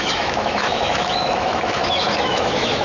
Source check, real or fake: fake